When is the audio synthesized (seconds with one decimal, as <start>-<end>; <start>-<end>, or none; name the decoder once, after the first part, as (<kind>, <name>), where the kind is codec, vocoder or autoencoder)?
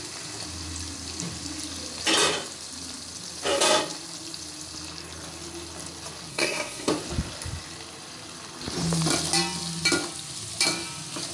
6.3-6.9 (codec, SNAC)